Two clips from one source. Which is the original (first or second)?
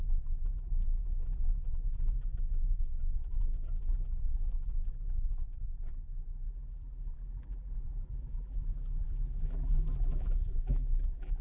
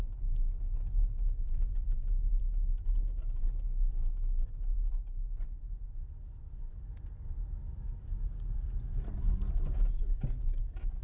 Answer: second